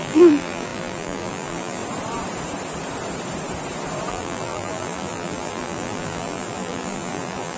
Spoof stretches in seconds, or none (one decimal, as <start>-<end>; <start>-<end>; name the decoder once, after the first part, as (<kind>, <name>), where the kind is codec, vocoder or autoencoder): 0.0-1.8 (vocoder, BigVGAN v2); 4.1-7.6

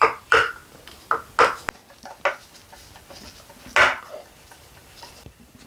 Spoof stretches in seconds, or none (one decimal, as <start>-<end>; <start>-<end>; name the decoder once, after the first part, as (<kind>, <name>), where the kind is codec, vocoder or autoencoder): 0.0-0.6 (vocoder, BigVGAN v2); 4.0-5.7

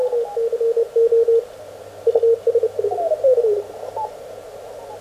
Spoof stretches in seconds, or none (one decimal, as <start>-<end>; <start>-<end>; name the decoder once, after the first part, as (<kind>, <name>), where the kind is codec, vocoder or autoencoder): none

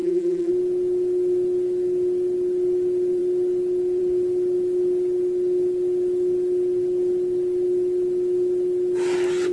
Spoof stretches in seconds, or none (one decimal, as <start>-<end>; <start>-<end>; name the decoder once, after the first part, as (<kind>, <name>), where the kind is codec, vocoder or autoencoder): 0.0-0.5 (vocoder, BigVGAN v2)

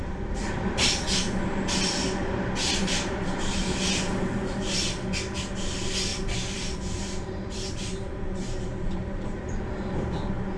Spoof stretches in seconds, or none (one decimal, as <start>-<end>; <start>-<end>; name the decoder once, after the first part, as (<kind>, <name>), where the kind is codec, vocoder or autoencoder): 2.7-3.8 (vocoder, BigVGAN v2); 6.1-9.6